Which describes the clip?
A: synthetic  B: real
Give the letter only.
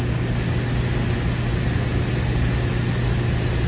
B